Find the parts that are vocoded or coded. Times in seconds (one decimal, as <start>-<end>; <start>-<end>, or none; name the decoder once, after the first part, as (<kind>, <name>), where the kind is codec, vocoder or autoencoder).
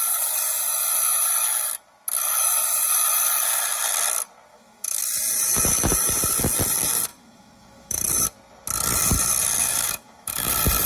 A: 4.5-5.0 (autoencoder, DAC-VAE); 7.1-8.0; 9.6-10.5